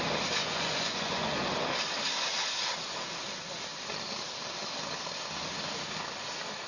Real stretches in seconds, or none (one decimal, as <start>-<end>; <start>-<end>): 0.0-0.4; 1.3-6.7